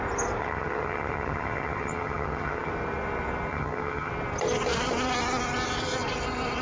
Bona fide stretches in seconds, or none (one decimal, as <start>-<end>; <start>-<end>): 0.0-0.4; 2.7-3.5; 4.1-6.6